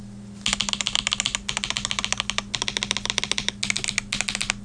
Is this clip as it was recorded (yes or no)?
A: yes